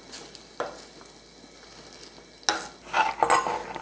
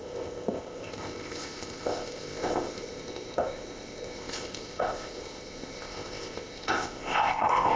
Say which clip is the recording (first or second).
first